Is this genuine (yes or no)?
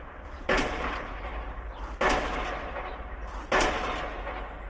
yes